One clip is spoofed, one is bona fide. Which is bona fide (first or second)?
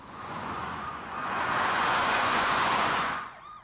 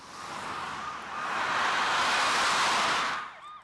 second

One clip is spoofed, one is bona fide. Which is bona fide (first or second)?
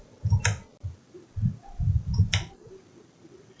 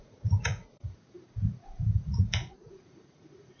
first